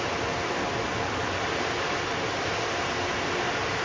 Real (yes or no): yes